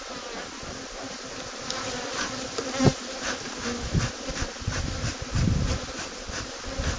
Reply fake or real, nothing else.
real